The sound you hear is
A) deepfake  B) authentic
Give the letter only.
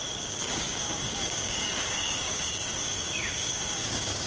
A